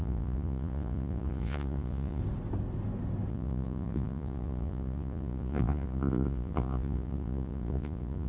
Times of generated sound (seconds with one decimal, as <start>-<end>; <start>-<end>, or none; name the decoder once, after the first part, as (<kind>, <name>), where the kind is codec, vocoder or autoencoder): 0.0-2.2 (vocoder, Vocos); 3.3-8.3